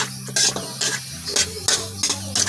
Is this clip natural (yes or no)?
yes